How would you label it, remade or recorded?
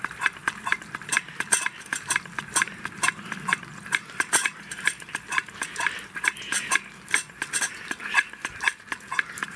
recorded